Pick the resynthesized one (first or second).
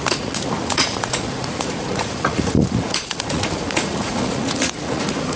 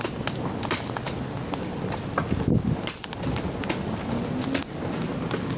first